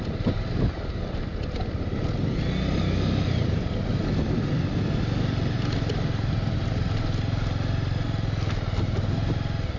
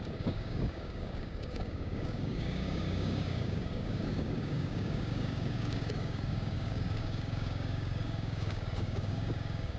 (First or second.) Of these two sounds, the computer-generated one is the second